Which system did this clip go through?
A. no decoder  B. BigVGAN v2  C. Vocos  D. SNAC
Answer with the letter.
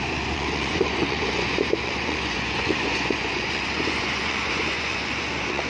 C